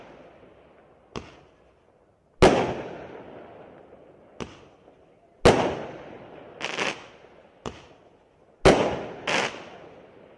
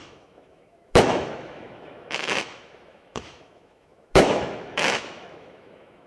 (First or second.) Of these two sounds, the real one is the first